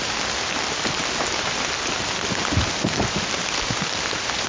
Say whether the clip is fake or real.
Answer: real